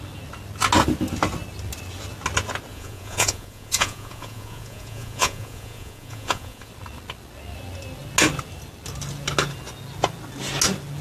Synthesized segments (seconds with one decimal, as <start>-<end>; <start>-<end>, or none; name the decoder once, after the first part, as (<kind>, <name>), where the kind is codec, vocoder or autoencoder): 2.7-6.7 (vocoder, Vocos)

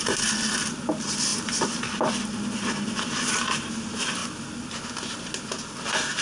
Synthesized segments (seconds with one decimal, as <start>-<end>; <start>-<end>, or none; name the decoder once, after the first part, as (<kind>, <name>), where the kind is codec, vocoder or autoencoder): none

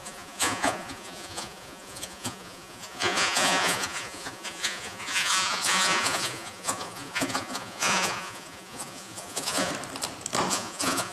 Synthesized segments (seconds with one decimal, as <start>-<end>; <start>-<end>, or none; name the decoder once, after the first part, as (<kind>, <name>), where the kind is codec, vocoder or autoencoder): 0.0-9.7 (vocoder, Vocos); 10.5-11.1

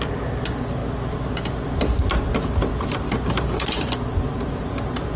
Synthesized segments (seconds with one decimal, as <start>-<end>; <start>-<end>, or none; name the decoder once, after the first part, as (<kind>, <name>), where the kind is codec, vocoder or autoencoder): none

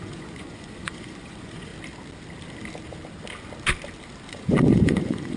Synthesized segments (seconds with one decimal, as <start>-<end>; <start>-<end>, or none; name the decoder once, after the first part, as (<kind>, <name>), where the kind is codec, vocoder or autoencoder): 0.0-1.7 (vocoder, Vocos); 4.3-5.4